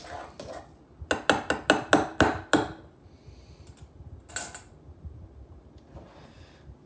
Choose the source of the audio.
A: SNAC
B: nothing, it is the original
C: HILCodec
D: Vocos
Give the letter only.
B